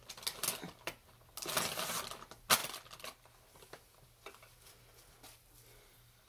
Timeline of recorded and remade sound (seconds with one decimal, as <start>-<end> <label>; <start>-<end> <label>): 0.0-6.3 recorded